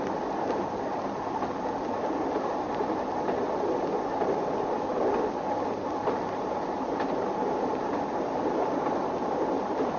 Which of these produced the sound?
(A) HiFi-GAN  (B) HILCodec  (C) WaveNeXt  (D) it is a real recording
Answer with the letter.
D